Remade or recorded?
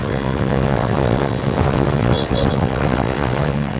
remade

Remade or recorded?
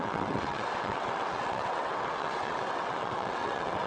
remade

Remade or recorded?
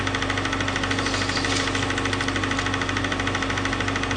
recorded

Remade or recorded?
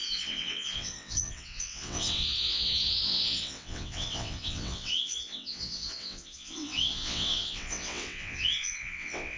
remade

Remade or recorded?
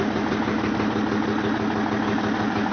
recorded